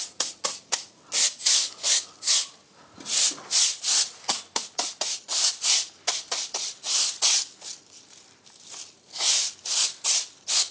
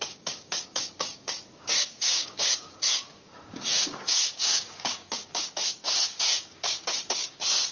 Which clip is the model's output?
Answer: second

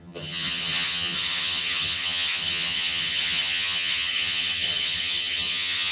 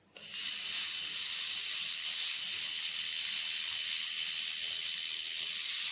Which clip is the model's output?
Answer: first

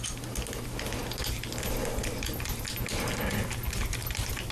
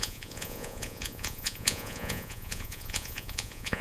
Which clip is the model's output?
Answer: second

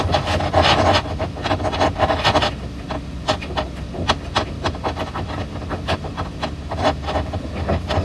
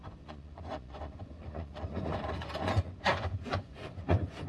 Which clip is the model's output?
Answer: second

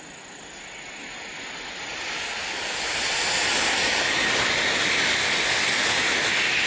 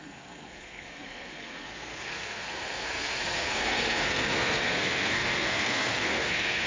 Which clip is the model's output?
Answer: second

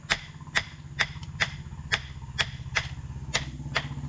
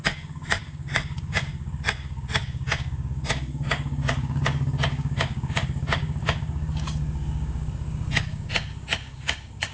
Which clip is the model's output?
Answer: second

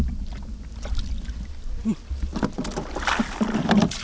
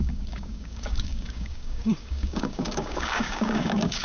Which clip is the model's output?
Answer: second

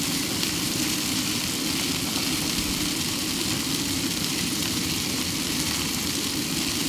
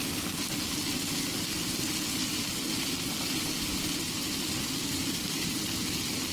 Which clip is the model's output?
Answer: first